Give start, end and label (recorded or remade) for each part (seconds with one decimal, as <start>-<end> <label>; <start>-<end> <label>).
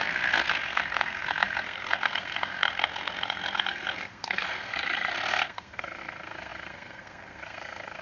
0.0-8.0 remade